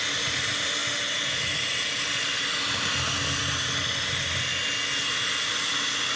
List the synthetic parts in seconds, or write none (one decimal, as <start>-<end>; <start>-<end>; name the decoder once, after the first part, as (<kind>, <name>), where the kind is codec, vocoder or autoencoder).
none